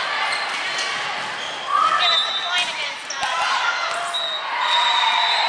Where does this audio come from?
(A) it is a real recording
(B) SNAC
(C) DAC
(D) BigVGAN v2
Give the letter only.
A